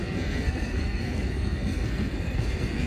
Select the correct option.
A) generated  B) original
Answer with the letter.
A